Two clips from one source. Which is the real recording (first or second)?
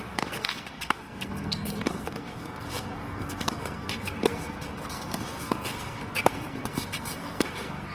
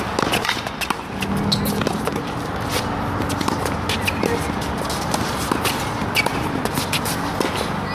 second